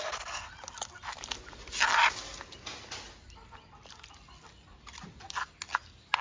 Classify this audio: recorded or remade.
recorded